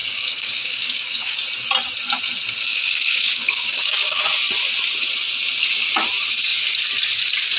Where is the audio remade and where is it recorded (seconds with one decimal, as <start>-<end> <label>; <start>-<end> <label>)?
0.0-1.4 remade; 1.4-2.7 recorded; 2.7-4.2 remade; 4.2-7.6 recorded